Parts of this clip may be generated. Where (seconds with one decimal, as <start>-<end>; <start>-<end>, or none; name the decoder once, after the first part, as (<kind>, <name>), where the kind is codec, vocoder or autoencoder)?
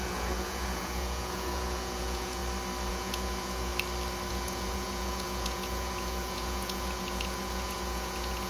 0.0-2.4 (vocoder, Vocos); 2.9-3.7; 4.3-8.5